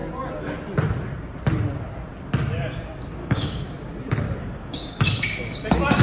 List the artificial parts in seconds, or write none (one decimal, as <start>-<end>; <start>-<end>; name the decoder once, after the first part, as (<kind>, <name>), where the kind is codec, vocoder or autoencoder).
3.2-3.7 (codec, DAC); 4.4-5.1